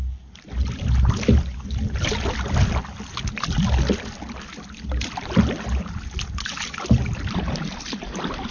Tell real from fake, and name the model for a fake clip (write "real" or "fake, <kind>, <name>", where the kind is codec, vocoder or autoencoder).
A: real